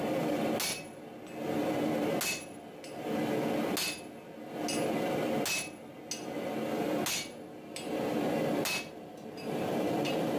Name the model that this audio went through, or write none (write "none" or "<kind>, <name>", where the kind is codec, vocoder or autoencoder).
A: none